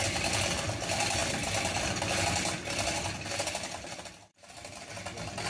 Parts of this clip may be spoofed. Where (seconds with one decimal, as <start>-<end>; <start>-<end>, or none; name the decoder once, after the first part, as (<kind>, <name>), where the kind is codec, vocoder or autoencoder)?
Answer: none